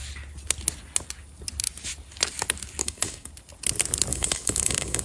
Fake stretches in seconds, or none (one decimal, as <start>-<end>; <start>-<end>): 2.8-3.3; 4.1-5.0